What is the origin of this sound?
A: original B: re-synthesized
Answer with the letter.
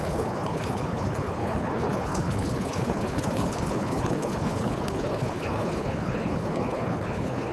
B